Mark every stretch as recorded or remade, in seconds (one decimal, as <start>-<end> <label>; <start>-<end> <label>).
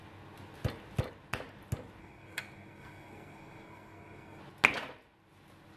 0.0-2.0 recorded; 2.0-4.4 remade; 4.4-5.8 recorded